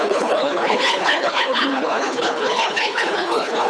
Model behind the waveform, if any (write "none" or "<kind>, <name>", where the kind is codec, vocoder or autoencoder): codec, HILCodec